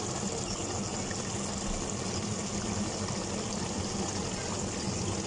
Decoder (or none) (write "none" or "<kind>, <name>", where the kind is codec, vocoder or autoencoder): none